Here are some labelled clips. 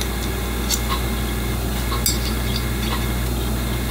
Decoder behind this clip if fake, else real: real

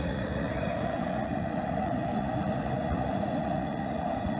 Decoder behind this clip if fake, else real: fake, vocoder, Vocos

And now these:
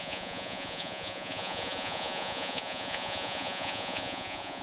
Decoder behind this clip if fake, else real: fake, vocoder, Vocos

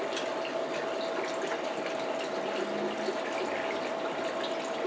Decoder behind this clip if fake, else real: real